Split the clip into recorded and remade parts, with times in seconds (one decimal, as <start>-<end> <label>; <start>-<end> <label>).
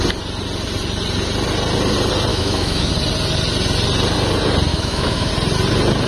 0.0-2.3 recorded; 2.3-2.9 remade; 2.9-4.7 recorded; 4.7-5.3 remade; 5.3-6.1 recorded